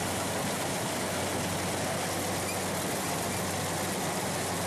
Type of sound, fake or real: real